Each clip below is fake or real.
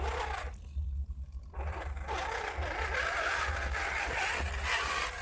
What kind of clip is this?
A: real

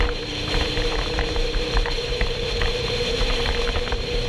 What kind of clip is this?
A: fake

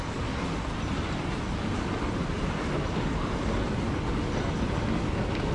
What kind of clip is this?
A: real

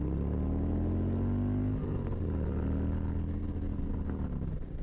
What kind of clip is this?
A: real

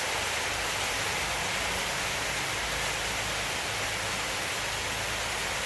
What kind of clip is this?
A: real